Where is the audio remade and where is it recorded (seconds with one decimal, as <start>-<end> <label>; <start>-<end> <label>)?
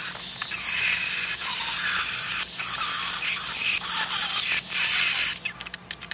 0.0-6.1 recorded